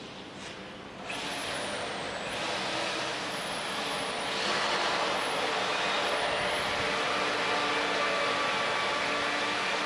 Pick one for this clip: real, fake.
real